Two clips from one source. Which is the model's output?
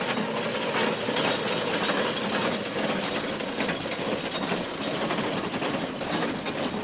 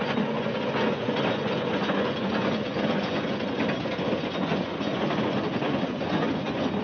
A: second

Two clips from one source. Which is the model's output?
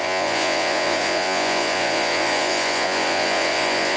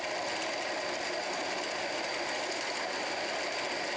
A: first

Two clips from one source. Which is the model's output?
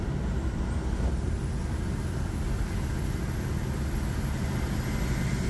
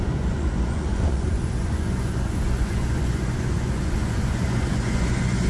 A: second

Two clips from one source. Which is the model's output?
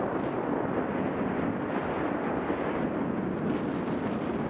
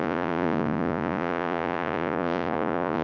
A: second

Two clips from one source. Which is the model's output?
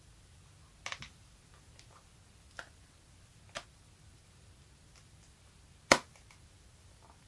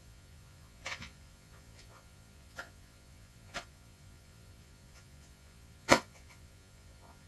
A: second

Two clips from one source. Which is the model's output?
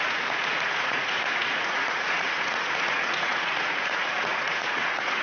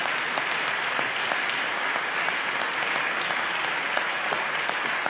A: first